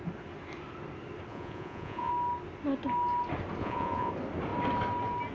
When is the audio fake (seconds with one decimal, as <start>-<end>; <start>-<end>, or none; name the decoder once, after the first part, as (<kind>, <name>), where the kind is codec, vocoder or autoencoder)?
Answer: 1.3-2.1 (vocoder, Vocos); 3.6-4.1